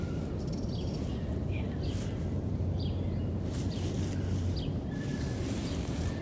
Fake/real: real